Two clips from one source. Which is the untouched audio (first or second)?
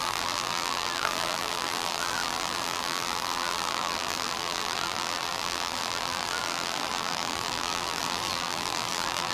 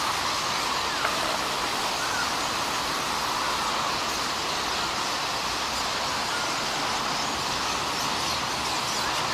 second